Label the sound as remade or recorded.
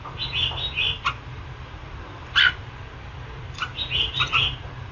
remade